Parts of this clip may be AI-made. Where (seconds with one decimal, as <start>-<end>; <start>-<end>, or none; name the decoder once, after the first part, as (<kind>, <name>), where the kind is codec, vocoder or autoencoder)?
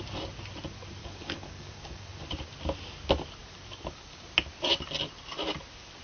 1.0-2.2 (codec, DAC); 3.4-4.2